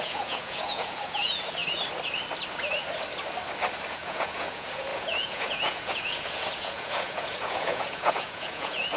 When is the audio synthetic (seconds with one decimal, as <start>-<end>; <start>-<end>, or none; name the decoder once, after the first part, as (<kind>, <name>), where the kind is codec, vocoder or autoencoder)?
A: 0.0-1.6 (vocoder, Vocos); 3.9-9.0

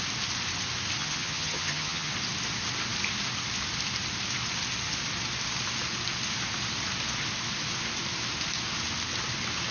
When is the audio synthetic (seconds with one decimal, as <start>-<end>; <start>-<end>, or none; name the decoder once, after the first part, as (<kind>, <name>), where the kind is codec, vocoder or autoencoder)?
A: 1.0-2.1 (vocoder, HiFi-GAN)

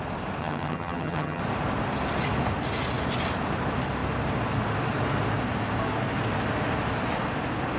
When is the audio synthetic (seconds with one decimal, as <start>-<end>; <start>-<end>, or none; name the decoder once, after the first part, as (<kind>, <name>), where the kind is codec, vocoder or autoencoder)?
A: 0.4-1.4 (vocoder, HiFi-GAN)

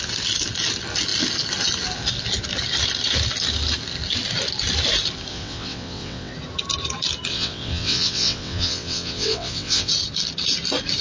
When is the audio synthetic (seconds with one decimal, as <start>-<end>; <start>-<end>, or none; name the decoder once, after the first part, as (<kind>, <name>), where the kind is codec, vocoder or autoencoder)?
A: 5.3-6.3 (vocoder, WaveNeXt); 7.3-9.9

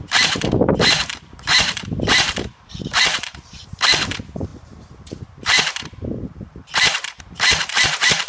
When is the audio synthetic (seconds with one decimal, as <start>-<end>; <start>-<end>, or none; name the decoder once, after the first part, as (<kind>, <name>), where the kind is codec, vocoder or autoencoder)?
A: 0.0-8.3 (vocoder, BigVGAN v2)